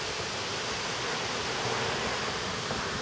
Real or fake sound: real